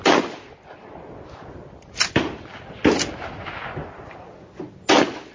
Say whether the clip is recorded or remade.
recorded